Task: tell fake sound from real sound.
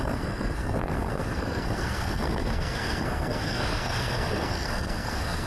fake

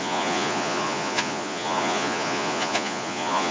fake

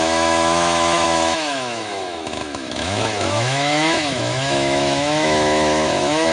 fake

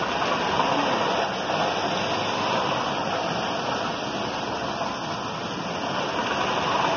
real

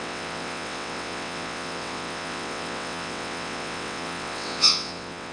fake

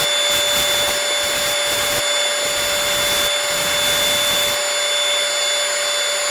real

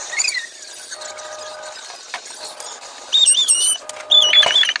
real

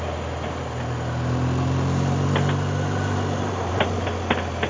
real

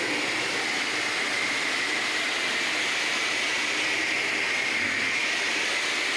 real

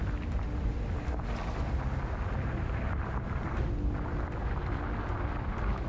real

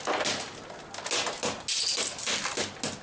real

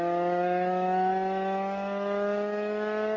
fake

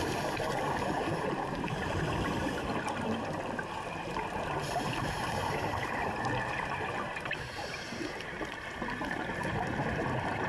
fake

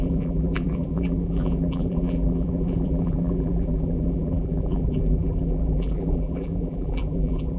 fake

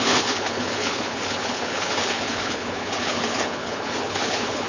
fake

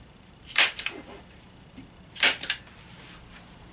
fake